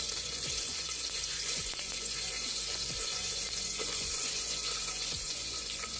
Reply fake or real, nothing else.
fake